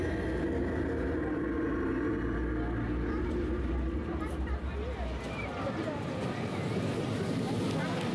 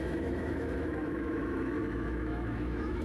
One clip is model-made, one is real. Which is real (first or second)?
first